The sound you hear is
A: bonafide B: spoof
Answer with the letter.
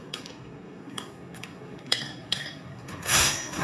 B